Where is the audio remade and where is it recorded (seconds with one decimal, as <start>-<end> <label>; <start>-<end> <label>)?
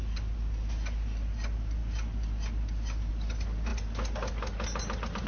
0.0-5.3 recorded